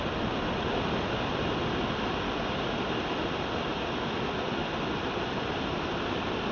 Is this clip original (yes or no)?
yes